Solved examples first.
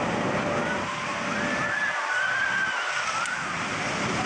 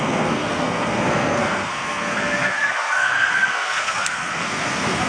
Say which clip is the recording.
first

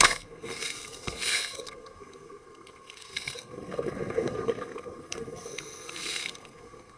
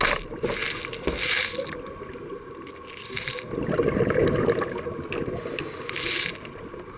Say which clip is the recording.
second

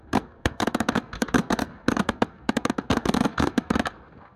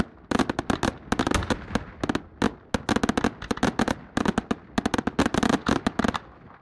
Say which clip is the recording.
second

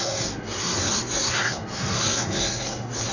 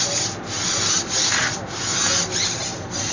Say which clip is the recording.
second